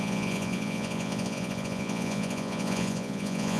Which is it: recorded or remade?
remade